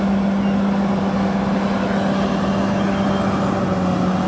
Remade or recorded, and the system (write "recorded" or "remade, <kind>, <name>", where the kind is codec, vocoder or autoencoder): recorded